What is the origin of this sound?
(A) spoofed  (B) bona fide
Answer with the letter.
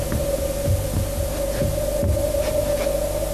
B